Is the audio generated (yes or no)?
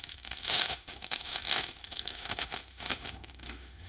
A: yes